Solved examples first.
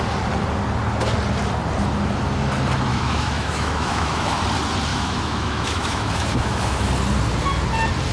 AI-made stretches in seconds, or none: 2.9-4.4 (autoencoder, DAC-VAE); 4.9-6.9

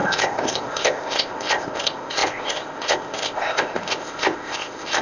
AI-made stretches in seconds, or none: 0.0-5.0 (codec, ZipCodec)

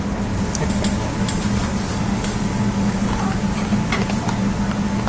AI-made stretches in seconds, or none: 1.9-3.3 (codec, DAC)

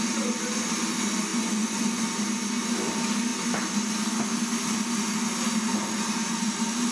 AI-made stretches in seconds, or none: 1.3-2.0 (vocoder, Vocos)

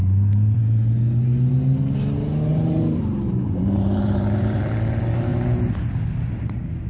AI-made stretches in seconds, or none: 0.0-0.6 (vocoder, BigVGAN v2); 2.5-4.6

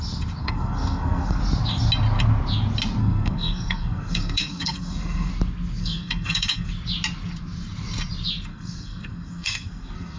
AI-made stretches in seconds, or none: 0.4-1.4 (codec, SNAC); 3.0-5.3; 5.8-6.7; 8.5-10.2

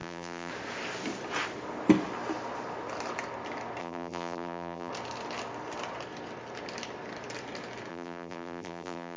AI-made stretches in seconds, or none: 0.0-0.5 (vocoder, BigVGAN v2); 3.8-4.9; 7.9-9.2

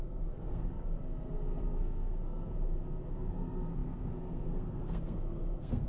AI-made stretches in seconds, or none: 0.0-0.6 (codec, SNAC); 1.8-2.5; 3.1-5.9